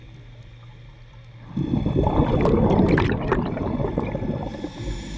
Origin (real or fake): real